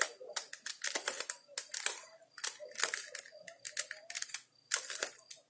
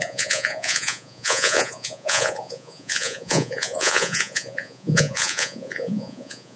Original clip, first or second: first